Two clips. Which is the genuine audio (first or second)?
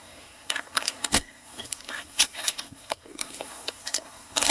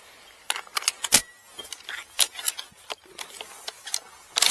second